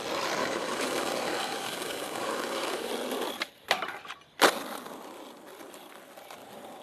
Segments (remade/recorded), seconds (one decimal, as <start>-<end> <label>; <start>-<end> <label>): 0.0-0.4 recorded; 0.4-2.9 remade; 2.9-6.8 recorded